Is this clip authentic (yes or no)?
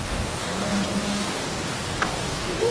no